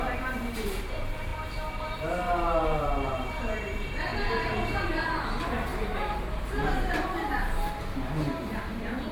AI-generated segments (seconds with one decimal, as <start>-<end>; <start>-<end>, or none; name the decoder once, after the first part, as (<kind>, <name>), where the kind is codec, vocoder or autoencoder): 0.0-9.1 (vocoder, BigVGAN v2)